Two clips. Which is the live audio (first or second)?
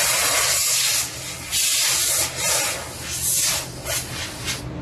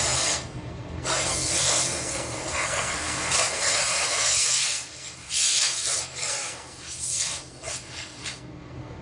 first